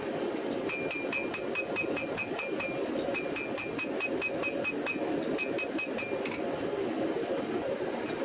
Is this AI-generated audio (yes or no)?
no